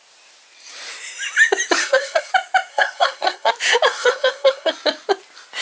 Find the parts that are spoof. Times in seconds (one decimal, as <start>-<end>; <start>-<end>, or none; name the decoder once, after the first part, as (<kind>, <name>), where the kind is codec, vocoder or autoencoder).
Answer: 1.8-2.3 (codec, SNAC); 2.7-3.5; 3.9-4.7